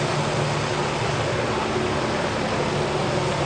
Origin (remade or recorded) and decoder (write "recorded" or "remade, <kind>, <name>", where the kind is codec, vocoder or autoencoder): recorded